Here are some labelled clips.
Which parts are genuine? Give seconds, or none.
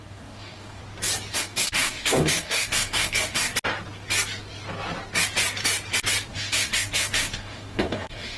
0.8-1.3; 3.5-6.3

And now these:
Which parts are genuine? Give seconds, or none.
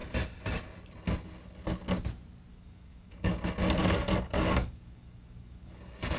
0.0-2.5; 3.3-3.8; 5.8-6.2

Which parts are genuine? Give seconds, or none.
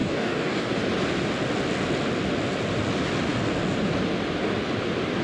0.7-5.2